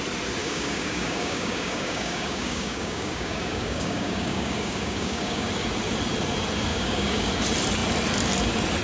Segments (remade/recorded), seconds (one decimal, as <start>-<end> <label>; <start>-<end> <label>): 0.0-0.4 recorded; 0.4-5.5 remade; 5.5-6.7 recorded; 6.7-7.3 remade; 7.3-8.8 recorded